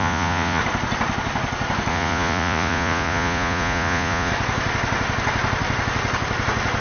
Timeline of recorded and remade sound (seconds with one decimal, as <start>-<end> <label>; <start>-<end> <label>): 0.0-0.6 remade; 0.6-1.9 recorded; 1.9-4.3 remade; 4.3-6.8 recorded